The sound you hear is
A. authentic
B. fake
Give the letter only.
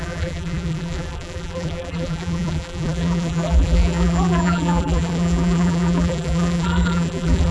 B